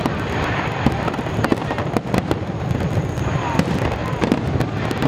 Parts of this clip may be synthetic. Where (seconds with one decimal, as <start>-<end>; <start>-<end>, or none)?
none